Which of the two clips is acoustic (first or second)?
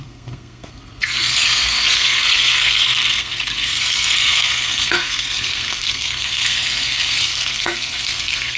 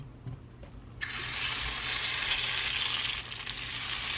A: second